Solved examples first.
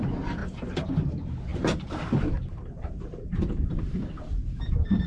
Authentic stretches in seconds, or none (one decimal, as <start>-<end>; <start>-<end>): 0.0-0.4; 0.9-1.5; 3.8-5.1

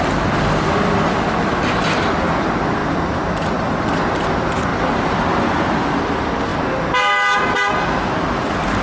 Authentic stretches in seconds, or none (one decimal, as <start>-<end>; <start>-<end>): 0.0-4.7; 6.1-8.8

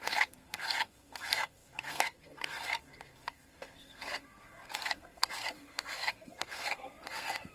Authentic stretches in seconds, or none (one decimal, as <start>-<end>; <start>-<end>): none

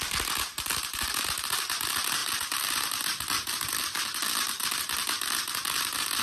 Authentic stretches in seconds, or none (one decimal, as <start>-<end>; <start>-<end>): 0.0-6.2

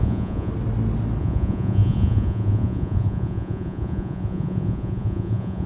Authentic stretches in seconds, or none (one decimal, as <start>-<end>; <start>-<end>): 0.5-1.2

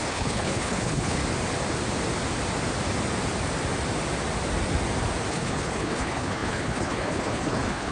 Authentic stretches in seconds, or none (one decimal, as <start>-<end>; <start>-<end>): 1.2-5.3